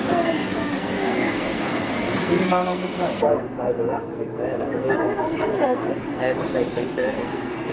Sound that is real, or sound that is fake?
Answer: fake